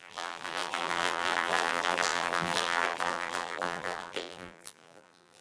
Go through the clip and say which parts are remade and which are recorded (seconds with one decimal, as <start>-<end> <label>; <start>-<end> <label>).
0.0-5.4 remade